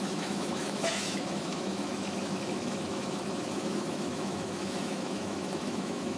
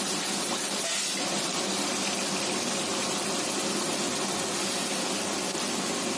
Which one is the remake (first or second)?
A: first